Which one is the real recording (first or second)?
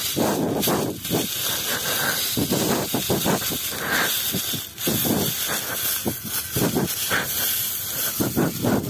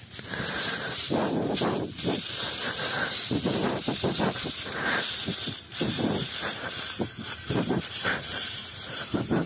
first